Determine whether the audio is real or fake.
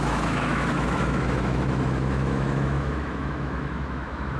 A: fake